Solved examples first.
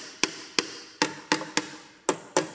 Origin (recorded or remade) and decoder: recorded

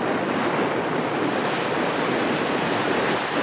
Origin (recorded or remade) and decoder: recorded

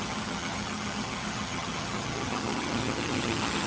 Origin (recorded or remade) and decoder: remade, vocoder, HiFi-GAN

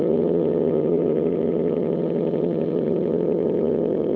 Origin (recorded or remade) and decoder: remade, vocoder, HiFi-GAN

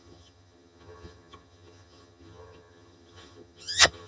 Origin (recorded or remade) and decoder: remade, vocoder, HiFi-GAN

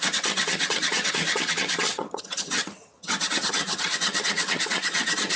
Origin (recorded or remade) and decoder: remade, vocoder, HiFi-GAN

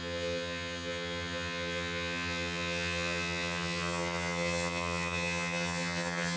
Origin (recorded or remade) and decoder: remade, vocoder, HiFi-GAN